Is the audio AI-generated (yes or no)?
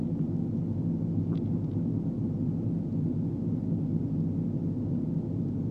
no